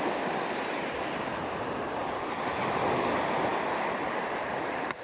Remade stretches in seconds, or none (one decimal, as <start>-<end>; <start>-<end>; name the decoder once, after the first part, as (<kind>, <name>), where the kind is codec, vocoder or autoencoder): none